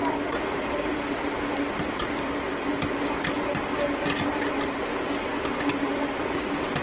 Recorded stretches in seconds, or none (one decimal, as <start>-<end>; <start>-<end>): 0.0-0.9; 2.7-6.8